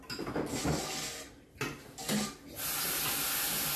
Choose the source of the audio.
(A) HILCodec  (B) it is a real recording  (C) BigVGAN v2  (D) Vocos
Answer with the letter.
B